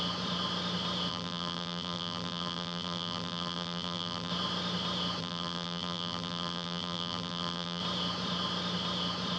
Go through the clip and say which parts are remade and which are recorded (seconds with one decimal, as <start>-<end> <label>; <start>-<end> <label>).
0.0-1.1 recorded; 1.1-4.3 remade; 4.3-5.2 recorded; 5.2-7.8 remade; 7.8-9.4 recorded